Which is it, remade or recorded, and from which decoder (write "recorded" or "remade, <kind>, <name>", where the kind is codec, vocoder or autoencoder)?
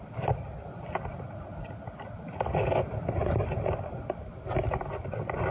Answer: recorded